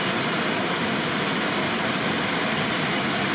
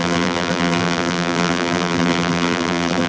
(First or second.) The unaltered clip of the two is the first